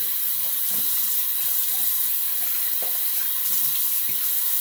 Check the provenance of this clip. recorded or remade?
recorded